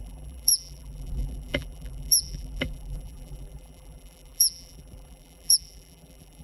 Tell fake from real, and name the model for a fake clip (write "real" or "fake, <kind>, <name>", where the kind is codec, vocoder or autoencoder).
fake, vocoder, BigVGAN v2